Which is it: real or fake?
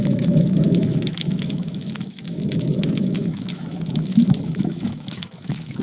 fake